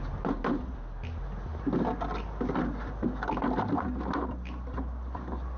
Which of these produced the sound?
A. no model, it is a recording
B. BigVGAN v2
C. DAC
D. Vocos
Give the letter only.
A